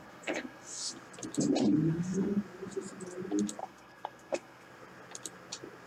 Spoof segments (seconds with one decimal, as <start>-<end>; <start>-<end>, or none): 0.0-0.9; 1.9-2.4; 3.6-4.7